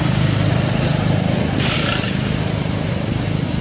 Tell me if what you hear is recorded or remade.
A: recorded